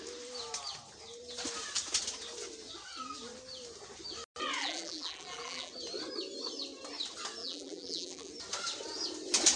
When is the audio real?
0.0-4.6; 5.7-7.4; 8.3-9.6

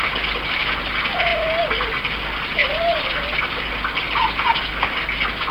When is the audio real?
0.0-2.6; 3.5-5.5

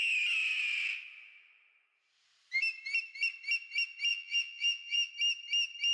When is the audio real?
0.0-4.1; 5.1-5.9

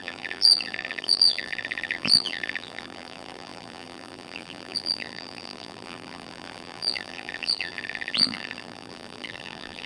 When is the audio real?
none

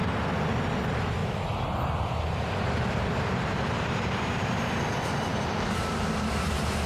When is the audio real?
0.0-1.2; 4.7-5.3; 6.5-6.9

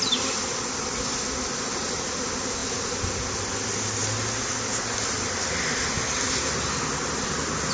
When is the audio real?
0.0-2.6; 3.5-4.0; 5.8-7.7

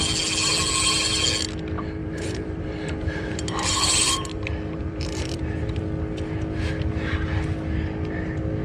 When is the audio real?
0.0-2.0; 5.8-8.6

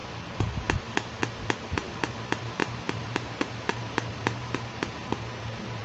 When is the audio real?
0.0-2.6; 3.3-3.7; 4.8-5.8